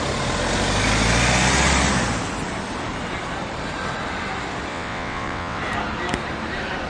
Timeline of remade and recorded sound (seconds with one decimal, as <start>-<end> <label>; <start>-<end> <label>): 0.0-4.7 recorded; 4.7-5.6 remade; 5.6-6.9 recorded